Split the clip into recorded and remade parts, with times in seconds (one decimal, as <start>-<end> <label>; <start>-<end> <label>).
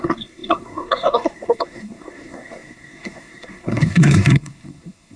0.0-5.2 remade